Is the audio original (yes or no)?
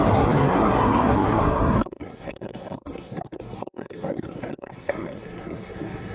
no